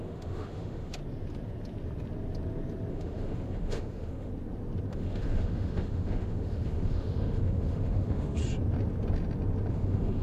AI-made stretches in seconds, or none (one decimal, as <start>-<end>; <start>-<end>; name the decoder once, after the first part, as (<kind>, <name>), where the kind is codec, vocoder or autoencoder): 0.0-1.0 (autoencoder, DAC-VAE); 2.9-4.3; 4.9-8.4; 9.7-10.2